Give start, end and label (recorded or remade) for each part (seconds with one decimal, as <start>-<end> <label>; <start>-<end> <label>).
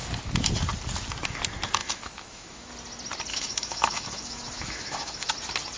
0.0-1.8 recorded; 1.8-2.7 remade; 2.7-3.3 recorded; 3.3-5.3 remade; 5.3-5.8 recorded